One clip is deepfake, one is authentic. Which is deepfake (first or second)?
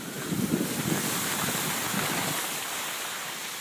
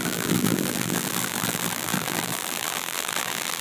second